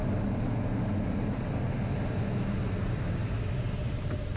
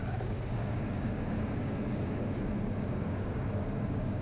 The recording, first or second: first